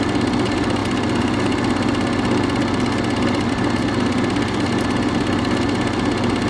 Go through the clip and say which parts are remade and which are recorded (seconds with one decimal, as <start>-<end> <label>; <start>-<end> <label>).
0.0-6.5 recorded